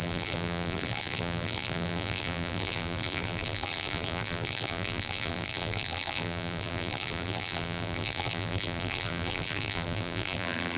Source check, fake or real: fake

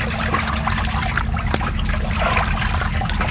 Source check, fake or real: real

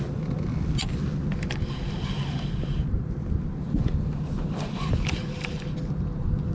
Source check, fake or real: real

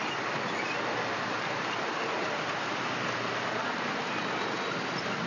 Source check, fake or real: fake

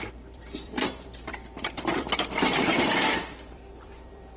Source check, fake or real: fake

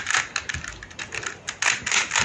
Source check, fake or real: real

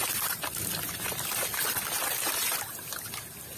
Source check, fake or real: fake